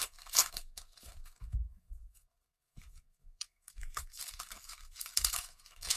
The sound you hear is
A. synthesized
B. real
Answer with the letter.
A